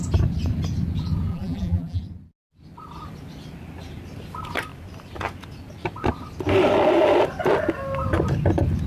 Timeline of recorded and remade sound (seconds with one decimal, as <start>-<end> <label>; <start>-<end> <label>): 0.0-1.3 recorded; 1.3-2.0 remade; 2.0-8.9 recorded